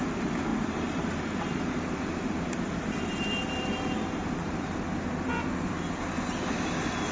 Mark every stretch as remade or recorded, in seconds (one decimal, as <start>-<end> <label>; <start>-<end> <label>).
0.0-0.5 recorded; 0.5-4.8 remade; 4.8-7.1 recorded